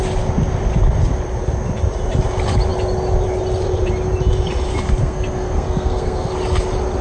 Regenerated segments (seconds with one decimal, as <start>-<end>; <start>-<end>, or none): 5.0-6.3

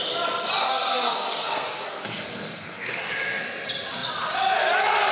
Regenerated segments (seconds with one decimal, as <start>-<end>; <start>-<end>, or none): 0.6-3.4

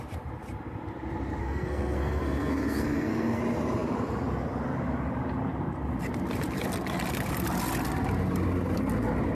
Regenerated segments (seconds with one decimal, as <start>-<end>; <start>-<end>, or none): 1.4-3.4

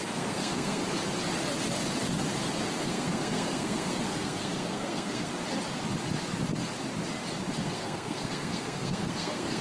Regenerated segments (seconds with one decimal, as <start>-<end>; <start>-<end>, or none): 0.0-0.8; 2.8-5.3; 7.6-9.6